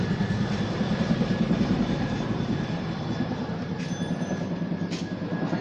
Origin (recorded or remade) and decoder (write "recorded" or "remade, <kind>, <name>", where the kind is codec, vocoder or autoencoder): remade, vocoder, BigVGAN v2